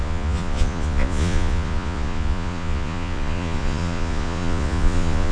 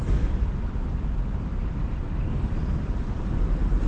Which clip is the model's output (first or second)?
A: first